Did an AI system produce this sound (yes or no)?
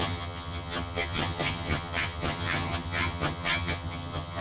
yes